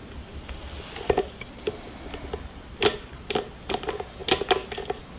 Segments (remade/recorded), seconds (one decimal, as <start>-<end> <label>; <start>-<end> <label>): 0.0-5.2 recorded